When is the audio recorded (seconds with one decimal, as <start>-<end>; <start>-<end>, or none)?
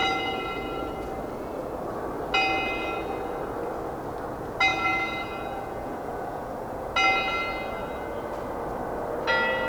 1.1-4.7; 6.7-9.7